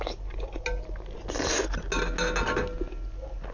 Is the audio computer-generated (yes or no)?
no